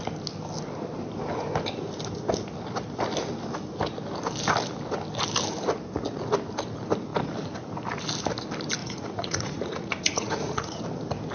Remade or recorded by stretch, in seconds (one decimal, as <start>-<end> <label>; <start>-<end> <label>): 0.0-8.8 recorded; 8.8-10.8 remade; 10.8-11.3 recorded